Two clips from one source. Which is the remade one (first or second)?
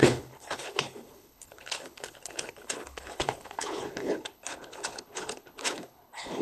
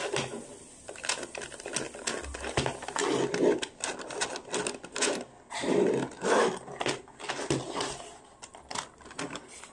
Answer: first